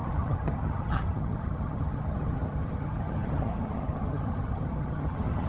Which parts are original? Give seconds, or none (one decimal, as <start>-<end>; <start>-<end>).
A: none